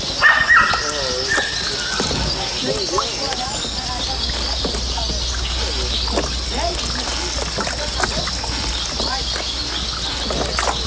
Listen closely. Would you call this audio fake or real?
real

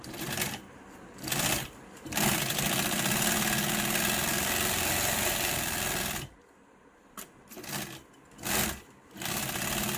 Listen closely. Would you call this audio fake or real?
real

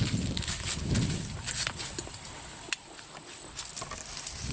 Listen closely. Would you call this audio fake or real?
real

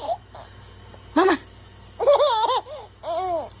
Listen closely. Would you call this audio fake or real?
real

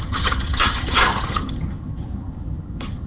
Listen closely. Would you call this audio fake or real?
fake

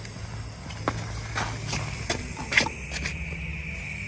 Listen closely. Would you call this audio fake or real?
real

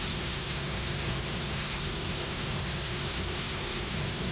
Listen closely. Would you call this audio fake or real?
fake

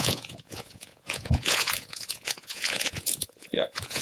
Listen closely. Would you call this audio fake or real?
fake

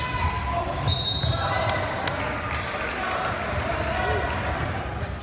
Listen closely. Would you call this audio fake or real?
real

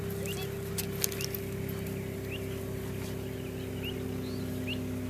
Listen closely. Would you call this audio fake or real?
real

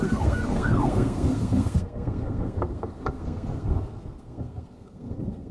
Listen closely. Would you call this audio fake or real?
fake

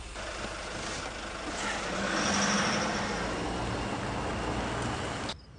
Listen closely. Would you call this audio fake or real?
real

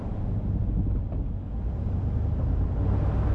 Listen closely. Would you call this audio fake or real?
real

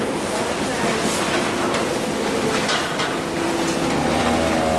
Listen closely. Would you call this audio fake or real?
real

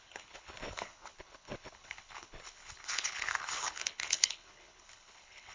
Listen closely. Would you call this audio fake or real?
fake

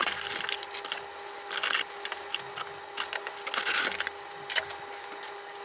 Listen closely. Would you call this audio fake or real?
real